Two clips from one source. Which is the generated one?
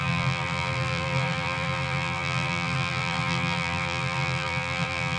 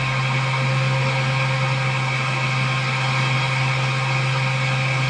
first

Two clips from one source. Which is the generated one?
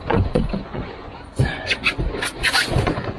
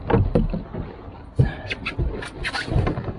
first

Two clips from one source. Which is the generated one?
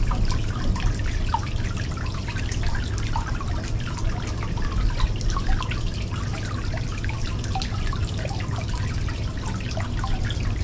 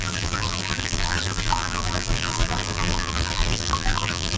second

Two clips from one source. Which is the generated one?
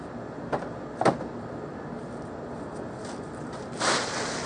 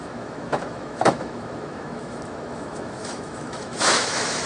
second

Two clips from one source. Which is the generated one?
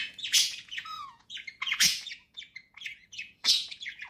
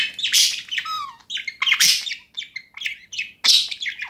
first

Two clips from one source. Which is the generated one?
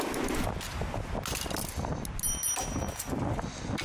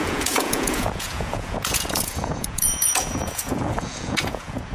second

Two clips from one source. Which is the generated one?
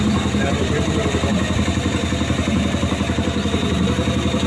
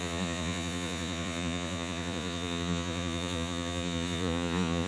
second